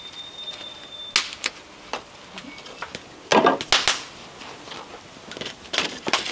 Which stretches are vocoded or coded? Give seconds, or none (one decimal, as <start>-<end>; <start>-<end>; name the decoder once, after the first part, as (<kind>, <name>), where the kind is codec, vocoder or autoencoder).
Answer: none